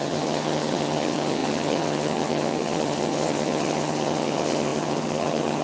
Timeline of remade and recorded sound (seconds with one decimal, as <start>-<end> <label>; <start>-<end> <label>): 0.0-5.6 remade